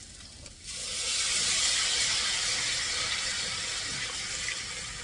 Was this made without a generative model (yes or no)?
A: yes